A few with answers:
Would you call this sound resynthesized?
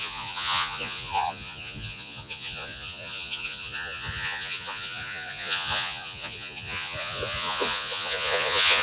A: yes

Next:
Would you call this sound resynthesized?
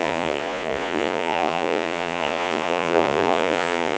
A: yes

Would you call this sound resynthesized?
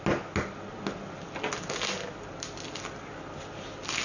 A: no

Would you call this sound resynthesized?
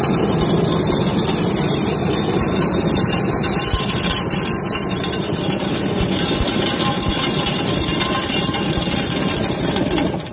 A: no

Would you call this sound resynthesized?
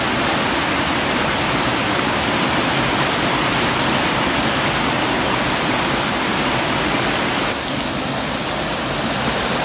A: no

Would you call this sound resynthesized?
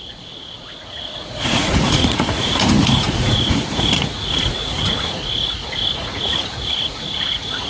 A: yes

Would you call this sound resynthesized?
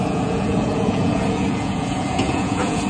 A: yes